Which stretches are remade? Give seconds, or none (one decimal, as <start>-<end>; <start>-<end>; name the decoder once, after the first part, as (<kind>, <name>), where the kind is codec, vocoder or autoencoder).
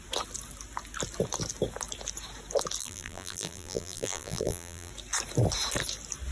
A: 2.8-4.9 (vocoder, BigVGAN v2)